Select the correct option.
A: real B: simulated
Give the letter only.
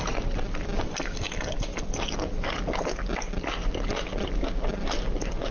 A